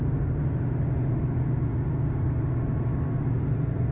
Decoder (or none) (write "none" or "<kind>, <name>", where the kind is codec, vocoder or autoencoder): vocoder, BigVGAN v2